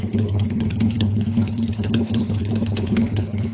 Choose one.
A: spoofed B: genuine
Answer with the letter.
A